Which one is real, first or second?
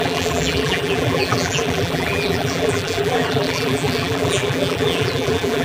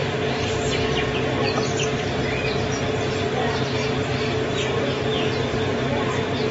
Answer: second